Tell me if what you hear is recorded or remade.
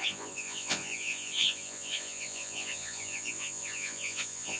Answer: remade